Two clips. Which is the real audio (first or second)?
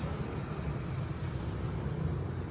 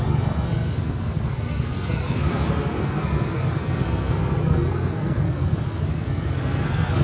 first